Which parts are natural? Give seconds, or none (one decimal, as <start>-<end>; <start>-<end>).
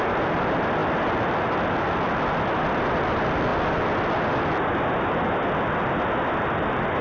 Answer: 0.0-7.0